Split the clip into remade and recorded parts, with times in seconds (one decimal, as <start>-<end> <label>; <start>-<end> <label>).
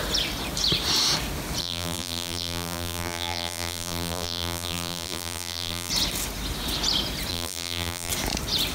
0.0-1.6 recorded; 1.6-5.9 remade; 5.9-7.3 recorded; 7.3-8.1 remade; 8.1-8.7 recorded